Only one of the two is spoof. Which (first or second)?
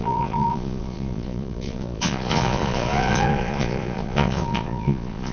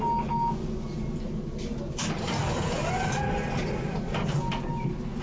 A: first